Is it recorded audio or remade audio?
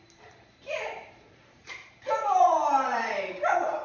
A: remade